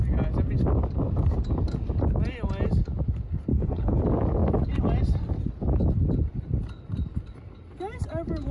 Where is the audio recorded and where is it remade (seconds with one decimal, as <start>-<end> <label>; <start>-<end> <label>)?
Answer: 0.0-3.5 recorded; 3.5-4.0 remade; 4.0-8.5 recorded

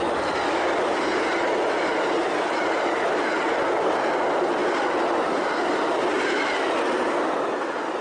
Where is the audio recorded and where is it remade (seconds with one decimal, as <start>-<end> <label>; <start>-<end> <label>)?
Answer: 0.0-8.0 recorded

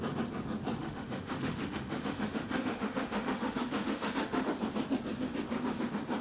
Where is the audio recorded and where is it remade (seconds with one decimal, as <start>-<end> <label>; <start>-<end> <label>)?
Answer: 0.0-0.8 recorded; 0.8-4.5 remade; 4.5-6.2 recorded

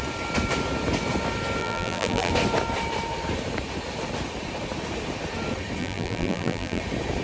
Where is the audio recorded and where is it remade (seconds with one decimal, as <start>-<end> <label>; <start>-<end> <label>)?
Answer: 0.0-1.6 recorded; 1.6-2.3 remade; 2.3-5.8 recorded; 5.8-6.8 remade; 6.8-7.2 recorded

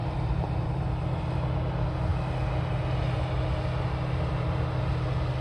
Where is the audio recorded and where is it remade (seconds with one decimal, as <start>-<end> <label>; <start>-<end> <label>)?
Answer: 0.0-0.8 remade; 0.8-5.4 recorded